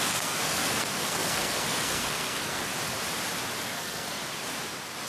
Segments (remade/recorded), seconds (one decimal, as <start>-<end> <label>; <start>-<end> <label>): 0.0-2.7 remade; 2.7-3.6 recorded; 3.6-4.2 remade; 4.2-5.1 recorded